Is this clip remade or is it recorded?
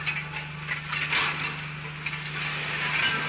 recorded